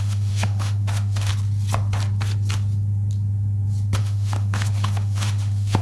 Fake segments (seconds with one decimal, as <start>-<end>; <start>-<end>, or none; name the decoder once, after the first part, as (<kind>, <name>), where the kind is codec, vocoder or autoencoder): 0.0-1.3 (autoencoder, DAC-VAE); 4.0-5.8